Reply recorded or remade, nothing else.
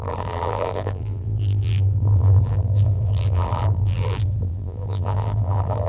remade